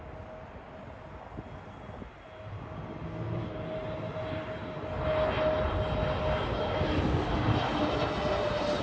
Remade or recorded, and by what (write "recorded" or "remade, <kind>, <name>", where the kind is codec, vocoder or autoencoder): recorded